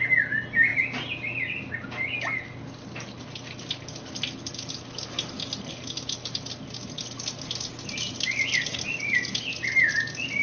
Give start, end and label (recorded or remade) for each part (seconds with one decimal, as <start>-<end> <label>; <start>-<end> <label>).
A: 0.0-10.4 recorded